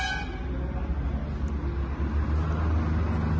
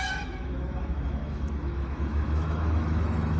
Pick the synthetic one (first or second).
second